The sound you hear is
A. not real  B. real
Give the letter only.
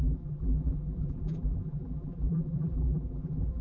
A